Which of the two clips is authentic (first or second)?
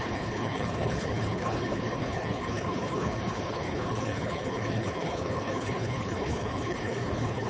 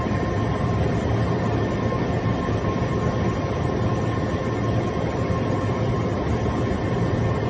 second